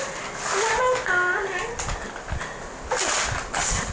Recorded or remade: recorded